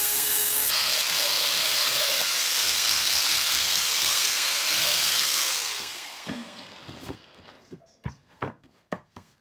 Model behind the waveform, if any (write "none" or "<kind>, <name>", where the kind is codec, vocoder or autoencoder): codec, SNAC